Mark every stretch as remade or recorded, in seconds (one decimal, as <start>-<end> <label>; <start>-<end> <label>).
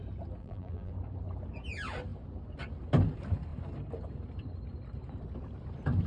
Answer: 0.0-0.4 recorded; 0.4-0.9 remade; 0.9-6.1 recorded